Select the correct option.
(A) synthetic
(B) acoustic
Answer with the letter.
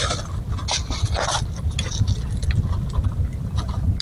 B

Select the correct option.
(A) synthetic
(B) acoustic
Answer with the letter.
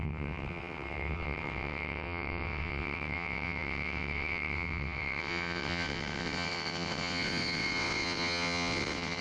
A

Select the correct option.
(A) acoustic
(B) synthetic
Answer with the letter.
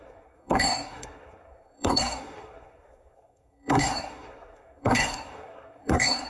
B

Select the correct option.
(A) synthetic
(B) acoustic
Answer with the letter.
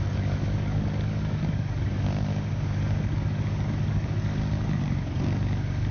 A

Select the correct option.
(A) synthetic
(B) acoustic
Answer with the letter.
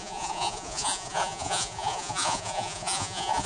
A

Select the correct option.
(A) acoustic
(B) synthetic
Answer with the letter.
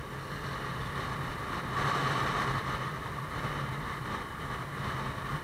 A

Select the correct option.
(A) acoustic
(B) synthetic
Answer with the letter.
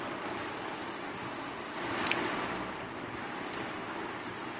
A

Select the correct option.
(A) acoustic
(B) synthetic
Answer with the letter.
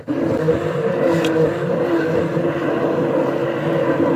A